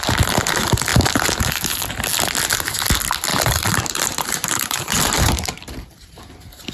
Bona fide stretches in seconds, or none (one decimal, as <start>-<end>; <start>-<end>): 0.0-3.3; 6.3-6.7